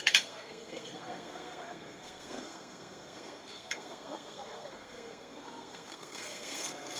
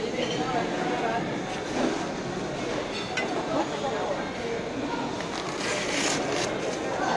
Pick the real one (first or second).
second